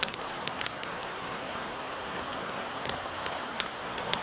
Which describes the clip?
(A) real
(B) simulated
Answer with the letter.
B